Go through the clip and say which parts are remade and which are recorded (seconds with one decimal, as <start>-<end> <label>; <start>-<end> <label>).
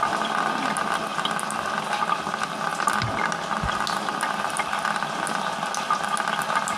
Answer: 0.0-6.8 recorded